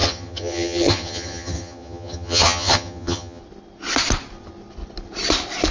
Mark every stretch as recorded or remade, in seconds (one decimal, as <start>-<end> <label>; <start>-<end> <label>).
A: 0.0-3.4 remade; 3.4-5.7 recorded